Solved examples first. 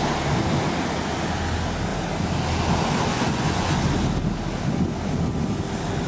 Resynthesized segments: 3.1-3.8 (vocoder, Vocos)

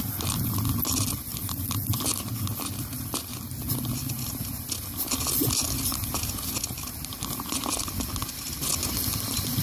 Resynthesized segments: none

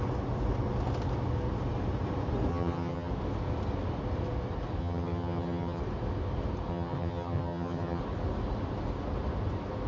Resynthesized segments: 2.5-3.1 (vocoder, HiFi-GAN); 4.8-5.8; 6.7-8.0

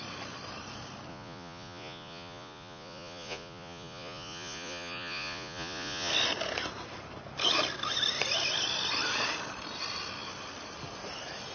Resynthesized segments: 1.1-6.1 (vocoder, Vocos)

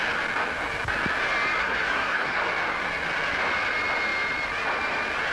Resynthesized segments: 1.6-2.4 (codec, SNAC)

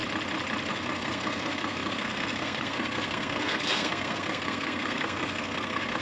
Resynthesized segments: 0.7-6.0 (codec, SNAC)

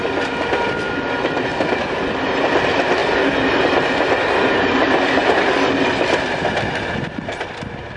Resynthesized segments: none